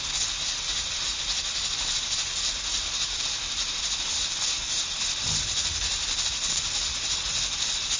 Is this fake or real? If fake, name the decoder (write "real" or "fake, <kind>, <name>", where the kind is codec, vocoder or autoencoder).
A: real